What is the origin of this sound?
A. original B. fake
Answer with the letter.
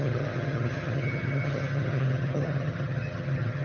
B